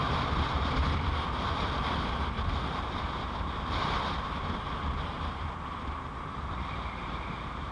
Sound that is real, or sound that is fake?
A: real